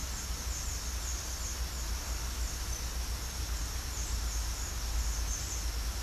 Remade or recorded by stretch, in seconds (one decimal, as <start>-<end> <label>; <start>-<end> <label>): 0.0-6.0 recorded